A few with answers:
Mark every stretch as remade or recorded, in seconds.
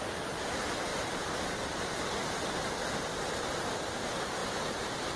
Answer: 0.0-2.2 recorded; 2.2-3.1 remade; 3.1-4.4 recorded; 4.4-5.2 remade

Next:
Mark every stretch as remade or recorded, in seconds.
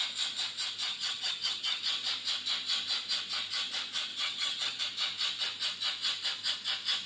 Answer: 0.0-0.9 recorded; 0.9-1.8 remade; 1.8-4.1 recorded; 4.1-4.8 remade; 4.8-7.1 recorded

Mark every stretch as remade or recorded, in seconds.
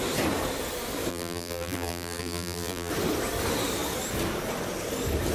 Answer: 0.0-1.1 recorded; 1.1-2.9 remade; 2.9-5.3 recorded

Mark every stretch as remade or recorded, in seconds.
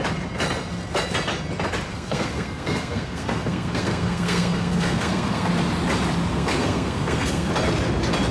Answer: 0.0-1.9 recorded; 1.9-5.5 remade; 5.5-6.3 recorded; 6.3-7.5 remade; 7.5-8.3 recorded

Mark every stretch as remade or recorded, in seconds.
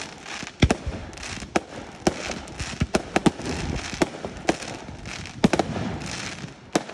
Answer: 0.0-6.9 recorded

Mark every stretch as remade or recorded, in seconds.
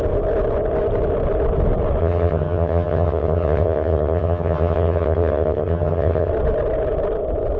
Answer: 0.0-2.0 recorded; 2.0-6.3 remade; 6.3-7.6 recorded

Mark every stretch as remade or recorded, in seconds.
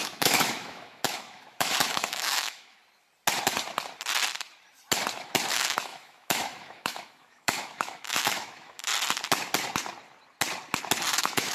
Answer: 0.0-2.8 remade; 2.8-5.5 recorded; 5.5-8.9 remade; 8.9-11.1 recorded; 11.1-11.5 remade